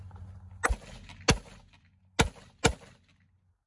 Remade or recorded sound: recorded